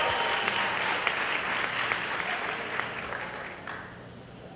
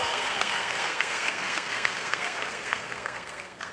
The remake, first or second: second